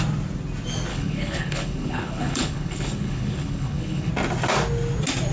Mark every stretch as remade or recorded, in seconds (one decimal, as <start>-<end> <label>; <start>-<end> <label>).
0.0-0.9 recorded; 0.9-4.1 remade; 4.1-5.3 recorded